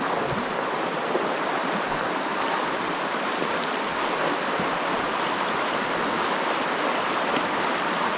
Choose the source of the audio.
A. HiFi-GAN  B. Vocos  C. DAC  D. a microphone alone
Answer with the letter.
D